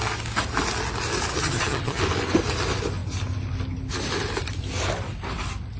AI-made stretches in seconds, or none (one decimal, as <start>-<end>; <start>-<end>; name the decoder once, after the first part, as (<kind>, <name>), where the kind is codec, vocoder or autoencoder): 1.3-2.0 (vocoder, HiFi-GAN)

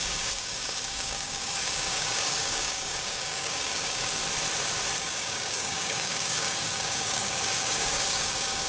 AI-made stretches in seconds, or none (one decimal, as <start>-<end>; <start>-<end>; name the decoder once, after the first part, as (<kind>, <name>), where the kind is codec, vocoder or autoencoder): 0.0-4.2 (codec, DAC); 5.0-8.7